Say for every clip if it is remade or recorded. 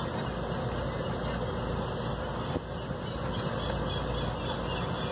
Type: recorded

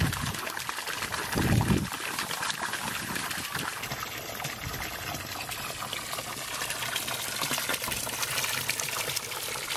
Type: recorded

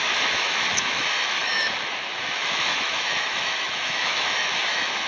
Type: remade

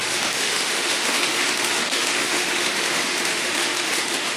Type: remade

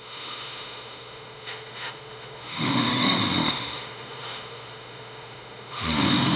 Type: remade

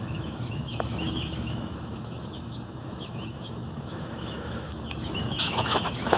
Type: remade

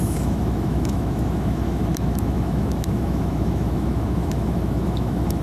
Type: remade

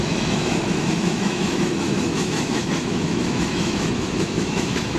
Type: remade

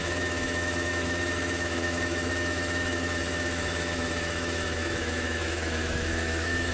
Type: remade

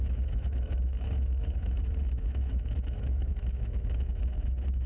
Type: remade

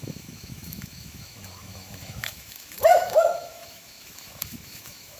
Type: remade